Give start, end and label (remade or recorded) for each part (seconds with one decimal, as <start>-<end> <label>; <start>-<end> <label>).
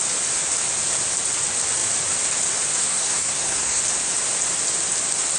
0.0-2.8 recorded; 2.8-3.8 remade; 3.8-5.4 recorded